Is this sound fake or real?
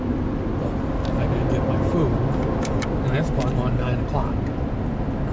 real